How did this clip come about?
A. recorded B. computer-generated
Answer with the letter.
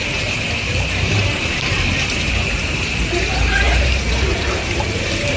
B